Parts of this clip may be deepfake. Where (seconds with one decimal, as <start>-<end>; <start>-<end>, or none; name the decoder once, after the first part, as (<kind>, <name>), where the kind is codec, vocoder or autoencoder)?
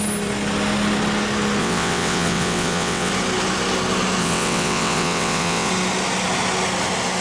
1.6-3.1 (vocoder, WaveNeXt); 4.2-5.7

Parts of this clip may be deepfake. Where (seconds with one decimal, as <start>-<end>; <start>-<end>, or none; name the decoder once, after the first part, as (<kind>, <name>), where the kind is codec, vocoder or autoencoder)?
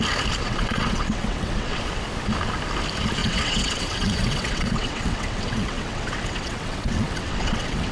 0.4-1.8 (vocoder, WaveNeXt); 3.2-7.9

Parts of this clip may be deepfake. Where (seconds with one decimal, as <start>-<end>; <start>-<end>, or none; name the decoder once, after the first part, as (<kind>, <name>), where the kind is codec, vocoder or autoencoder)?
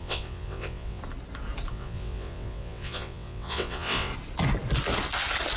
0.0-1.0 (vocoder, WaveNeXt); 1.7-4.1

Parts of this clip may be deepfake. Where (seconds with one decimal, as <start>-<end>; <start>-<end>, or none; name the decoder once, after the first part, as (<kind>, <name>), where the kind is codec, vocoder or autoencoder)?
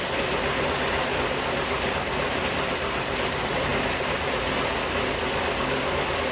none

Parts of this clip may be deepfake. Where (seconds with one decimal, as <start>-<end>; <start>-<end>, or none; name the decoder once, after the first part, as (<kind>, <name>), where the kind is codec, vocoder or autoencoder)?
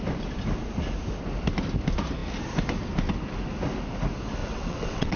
4.4-5.2 (vocoder, WaveNeXt)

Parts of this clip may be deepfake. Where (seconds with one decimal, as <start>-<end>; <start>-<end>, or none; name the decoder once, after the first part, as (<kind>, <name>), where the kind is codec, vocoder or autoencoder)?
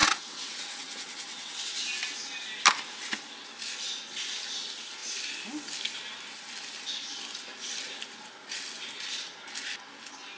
0.0-1.6 (vocoder, WaveNeXt)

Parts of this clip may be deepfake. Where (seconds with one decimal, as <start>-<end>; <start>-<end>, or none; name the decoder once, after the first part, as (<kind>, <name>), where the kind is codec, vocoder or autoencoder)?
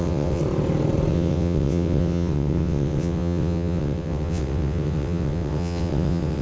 0.0-0.4 (vocoder, WaveNeXt); 1.1-6.4